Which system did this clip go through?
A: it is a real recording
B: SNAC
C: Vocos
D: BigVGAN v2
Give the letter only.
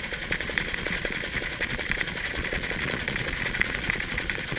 C